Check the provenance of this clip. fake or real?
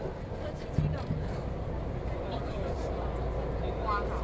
real